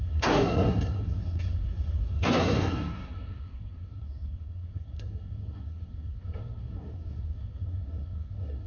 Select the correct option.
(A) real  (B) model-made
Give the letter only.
B